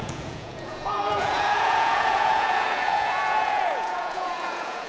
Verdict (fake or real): fake